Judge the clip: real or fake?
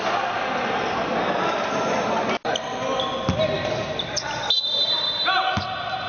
real